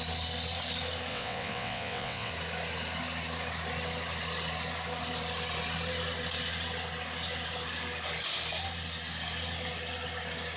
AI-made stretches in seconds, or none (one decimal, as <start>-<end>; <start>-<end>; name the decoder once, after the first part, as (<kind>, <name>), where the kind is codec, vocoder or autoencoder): 1.1-2.3 (vocoder, WaveNeXt)